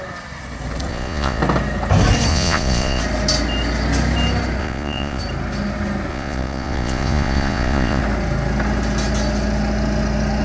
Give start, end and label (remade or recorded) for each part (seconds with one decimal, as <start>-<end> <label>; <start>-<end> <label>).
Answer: 0.0-0.9 recorded; 0.9-1.4 remade; 1.4-2.3 recorded; 2.3-3.0 remade; 3.0-4.6 recorded; 4.6-5.2 remade; 5.2-6.1 recorded; 6.1-8.0 remade; 8.0-10.4 recorded